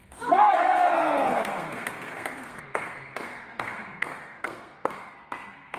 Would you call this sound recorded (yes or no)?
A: no